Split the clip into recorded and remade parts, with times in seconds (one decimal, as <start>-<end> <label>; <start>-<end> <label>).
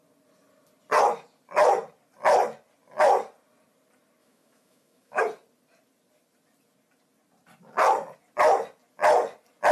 0.0-4.2 recorded; 4.2-5.2 remade; 5.2-9.7 recorded